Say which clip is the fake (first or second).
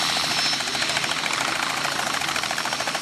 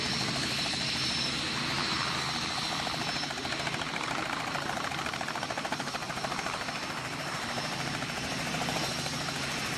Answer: second